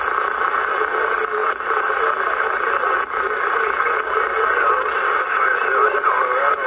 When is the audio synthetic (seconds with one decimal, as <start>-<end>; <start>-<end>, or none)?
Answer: none